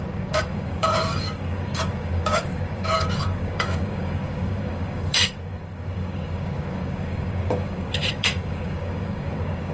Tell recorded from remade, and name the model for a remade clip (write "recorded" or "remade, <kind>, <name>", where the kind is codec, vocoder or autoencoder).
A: remade, codec, DAC